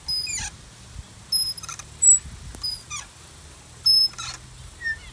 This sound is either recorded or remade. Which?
recorded